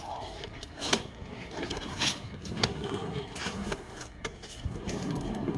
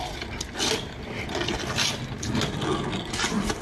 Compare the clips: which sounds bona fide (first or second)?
second